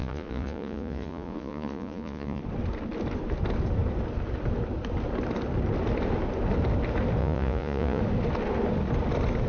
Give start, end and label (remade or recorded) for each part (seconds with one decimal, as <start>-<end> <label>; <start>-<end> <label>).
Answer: 0.0-2.4 remade; 2.4-7.2 recorded; 7.2-8.0 remade; 8.0-9.5 recorded